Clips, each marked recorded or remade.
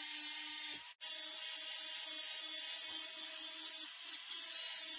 recorded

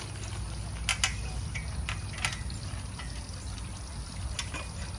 recorded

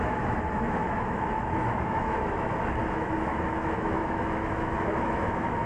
remade